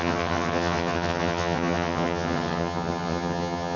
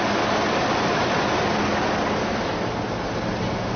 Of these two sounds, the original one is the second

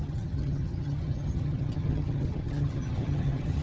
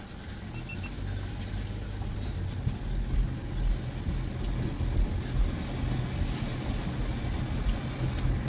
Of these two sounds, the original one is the second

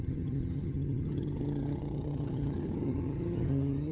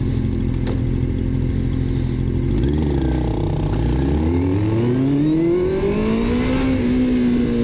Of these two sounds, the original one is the second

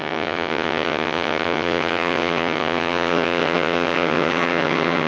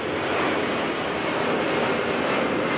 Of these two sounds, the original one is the second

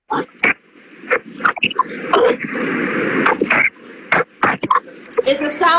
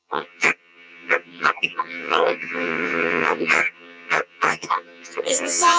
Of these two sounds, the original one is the first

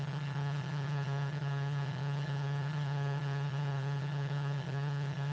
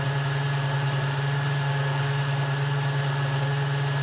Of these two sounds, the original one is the second